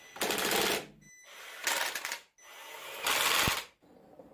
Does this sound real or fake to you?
real